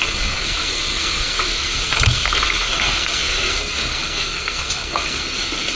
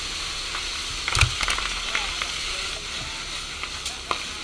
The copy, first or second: first